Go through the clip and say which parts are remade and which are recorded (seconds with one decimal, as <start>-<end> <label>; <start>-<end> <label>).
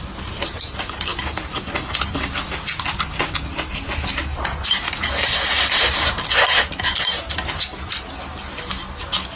0.0-9.4 recorded